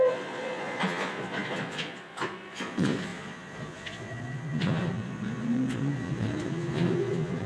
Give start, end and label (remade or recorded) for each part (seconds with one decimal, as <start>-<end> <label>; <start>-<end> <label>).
0.0-7.5 remade